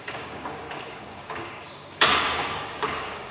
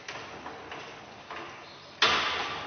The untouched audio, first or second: second